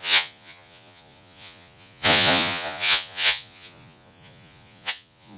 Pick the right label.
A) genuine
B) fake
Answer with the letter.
B